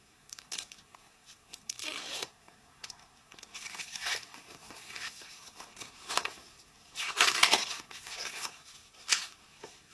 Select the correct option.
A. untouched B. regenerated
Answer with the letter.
B